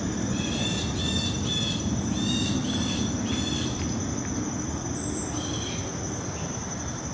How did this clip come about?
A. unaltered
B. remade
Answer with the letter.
A